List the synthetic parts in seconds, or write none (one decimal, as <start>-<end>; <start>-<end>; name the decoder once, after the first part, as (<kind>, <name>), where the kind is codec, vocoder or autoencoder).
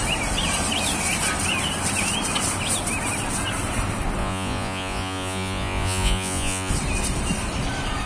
4.2-6.7 (vocoder, Vocos)